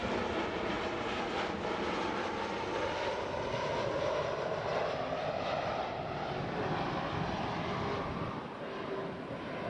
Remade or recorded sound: recorded